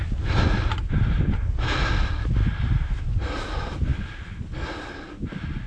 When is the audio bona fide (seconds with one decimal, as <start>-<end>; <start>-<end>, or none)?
0.0-5.7